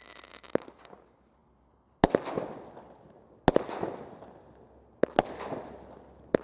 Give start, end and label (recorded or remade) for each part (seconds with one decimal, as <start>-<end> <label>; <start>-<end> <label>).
0.0-6.4 recorded

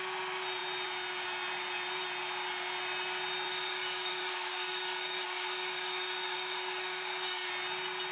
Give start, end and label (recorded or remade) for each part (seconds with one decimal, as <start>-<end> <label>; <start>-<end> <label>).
0.0-3.5 recorded; 3.5-7.5 remade; 7.5-8.1 recorded

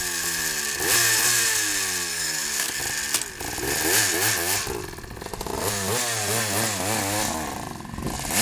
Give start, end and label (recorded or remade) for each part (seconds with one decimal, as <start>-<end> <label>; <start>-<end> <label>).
0.0-2.1 recorded; 2.1-2.8 remade; 2.8-8.4 recorded

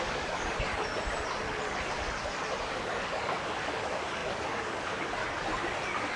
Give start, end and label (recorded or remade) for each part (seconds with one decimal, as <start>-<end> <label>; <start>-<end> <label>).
0.0-0.7 remade; 0.7-2.6 recorded; 2.6-5.2 remade; 5.2-6.2 recorded

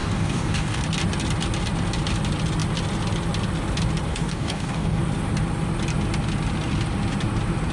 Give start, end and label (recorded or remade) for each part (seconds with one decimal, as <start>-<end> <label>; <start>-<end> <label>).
0.0-0.8 remade; 0.8-4.1 recorded; 4.1-5.0 remade; 5.0-7.7 recorded

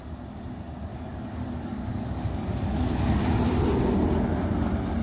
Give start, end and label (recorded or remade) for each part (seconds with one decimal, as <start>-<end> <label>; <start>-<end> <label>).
0.0-0.9 recorded; 0.9-3.1 remade; 3.1-5.0 recorded